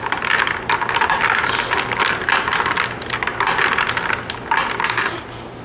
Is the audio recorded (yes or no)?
yes